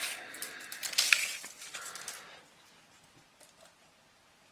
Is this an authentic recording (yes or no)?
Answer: yes